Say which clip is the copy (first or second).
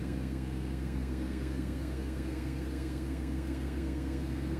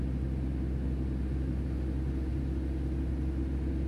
first